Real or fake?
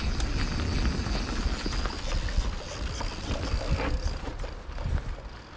real